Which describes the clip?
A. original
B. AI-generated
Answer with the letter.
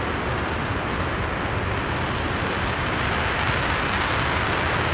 A